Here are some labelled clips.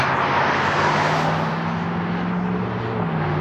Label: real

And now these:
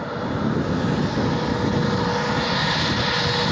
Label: real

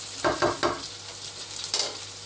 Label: real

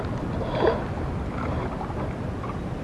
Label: real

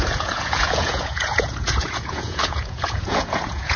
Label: fake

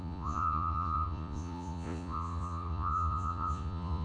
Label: fake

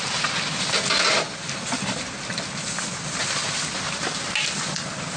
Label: real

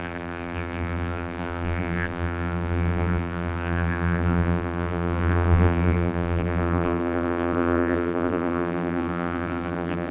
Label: fake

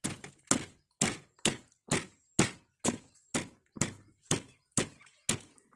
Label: real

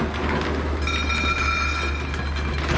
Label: real